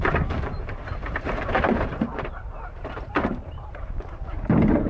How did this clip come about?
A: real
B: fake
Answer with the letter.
B